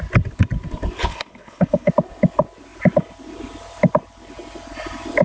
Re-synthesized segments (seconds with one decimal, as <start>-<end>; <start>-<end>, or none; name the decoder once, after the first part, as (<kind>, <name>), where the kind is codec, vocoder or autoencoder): 1.1-1.9 (codec, HILCodec)